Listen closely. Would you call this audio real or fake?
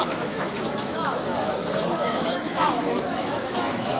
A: fake